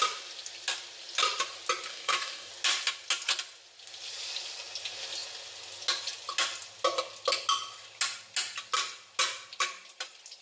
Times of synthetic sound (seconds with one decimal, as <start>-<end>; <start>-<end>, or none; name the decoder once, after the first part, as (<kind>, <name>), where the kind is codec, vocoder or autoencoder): 1.9-2.5 (codec, DAC)